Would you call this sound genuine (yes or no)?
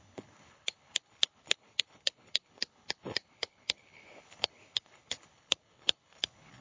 no